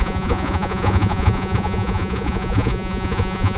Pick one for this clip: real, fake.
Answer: fake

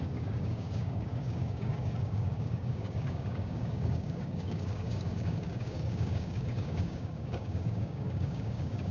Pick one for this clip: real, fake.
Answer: fake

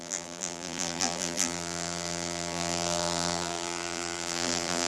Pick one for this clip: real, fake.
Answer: fake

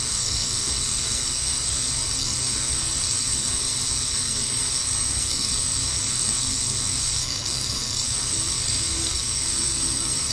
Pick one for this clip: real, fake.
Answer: fake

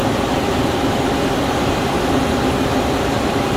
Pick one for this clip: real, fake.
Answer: real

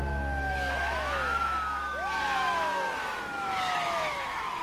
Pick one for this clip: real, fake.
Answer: fake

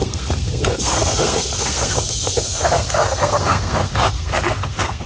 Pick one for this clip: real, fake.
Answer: fake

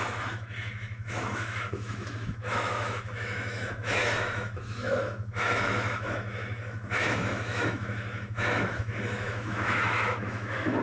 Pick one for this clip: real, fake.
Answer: fake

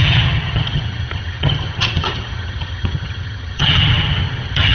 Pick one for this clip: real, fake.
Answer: fake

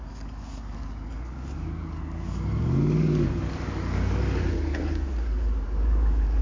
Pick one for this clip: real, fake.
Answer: fake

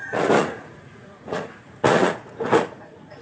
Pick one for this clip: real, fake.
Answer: fake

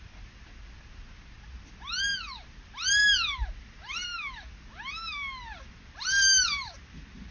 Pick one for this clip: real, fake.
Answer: real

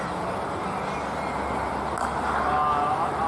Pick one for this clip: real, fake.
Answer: real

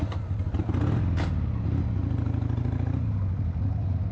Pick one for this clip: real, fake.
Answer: real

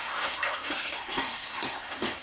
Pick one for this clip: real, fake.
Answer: fake